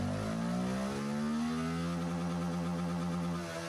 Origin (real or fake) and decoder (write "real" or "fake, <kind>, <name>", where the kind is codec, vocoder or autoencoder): real